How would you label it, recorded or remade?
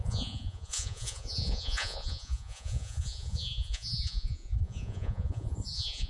remade